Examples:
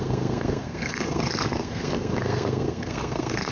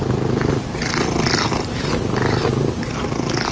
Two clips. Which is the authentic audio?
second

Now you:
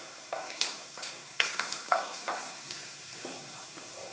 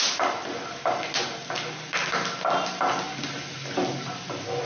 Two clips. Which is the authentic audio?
second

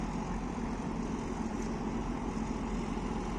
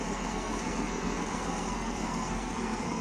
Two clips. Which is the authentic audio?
first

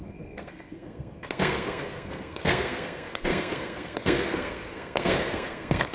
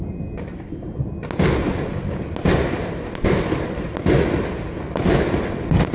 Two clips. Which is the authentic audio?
second